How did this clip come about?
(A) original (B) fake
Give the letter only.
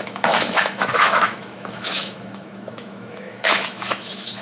B